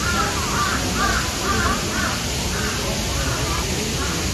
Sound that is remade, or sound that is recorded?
recorded